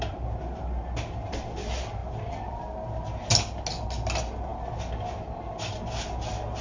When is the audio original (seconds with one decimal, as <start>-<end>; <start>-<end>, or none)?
0.0-6.6